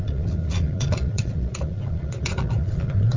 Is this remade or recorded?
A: remade